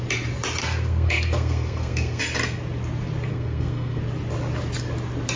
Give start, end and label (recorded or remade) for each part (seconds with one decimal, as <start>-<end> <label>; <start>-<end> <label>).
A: 0.0-0.6 recorded; 0.6-2.2 remade; 2.2-3.3 recorded; 3.3-4.0 remade; 4.0-5.4 recorded